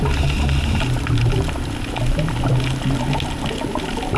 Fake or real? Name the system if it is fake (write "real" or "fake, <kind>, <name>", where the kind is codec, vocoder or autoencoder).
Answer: real